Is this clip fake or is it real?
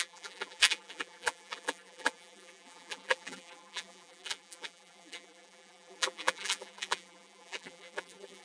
fake